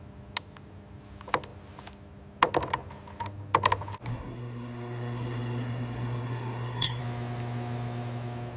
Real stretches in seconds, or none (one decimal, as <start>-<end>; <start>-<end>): 0.0-4.1; 7.0-8.6